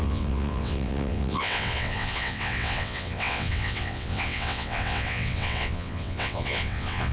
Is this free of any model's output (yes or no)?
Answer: no